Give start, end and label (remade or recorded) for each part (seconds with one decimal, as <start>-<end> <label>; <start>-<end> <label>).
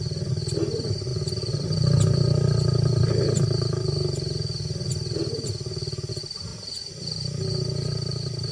0.0-8.5 recorded